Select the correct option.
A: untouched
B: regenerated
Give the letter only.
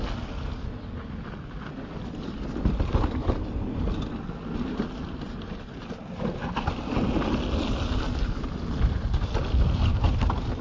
A